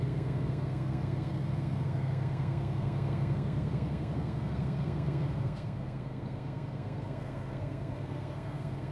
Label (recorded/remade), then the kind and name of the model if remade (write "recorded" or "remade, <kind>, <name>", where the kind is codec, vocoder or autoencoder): remade, codec, SNAC